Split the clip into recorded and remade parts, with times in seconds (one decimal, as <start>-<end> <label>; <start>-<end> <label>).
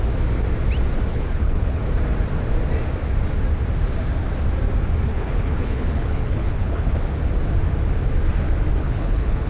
0.0-1.1 recorded; 1.1-1.8 remade; 1.8-5.1 recorded; 5.1-7.0 remade; 7.0-8.8 recorded; 8.8-9.5 remade